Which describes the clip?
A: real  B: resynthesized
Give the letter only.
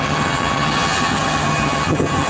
B